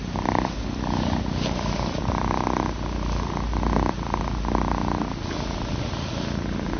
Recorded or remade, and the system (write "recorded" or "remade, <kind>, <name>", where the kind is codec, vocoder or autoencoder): recorded